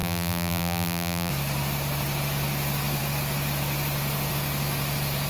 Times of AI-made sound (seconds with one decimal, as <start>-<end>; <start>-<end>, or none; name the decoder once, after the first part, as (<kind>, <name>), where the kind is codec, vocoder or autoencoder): 0.0-1.3 (vocoder, BigVGAN v2)

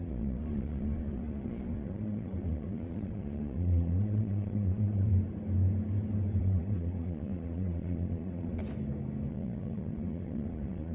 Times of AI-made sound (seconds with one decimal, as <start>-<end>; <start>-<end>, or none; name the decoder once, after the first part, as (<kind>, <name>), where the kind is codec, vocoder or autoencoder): 0.0-5.1 (vocoder, Vocos); 6.4-8.6; 9.3-10.9

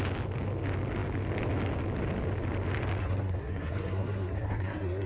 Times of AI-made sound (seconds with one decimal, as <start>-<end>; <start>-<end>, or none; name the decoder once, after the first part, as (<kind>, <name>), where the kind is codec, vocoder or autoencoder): 3.0-5.1 (codec, SNAC)

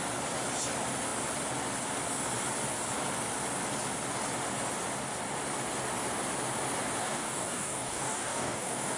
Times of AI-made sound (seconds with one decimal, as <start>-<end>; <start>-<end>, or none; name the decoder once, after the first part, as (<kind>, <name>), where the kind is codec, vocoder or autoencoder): 7.0-9.0 (codec, DAC)